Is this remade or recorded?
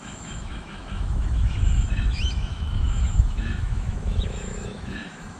remade